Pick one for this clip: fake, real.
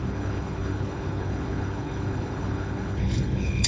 fake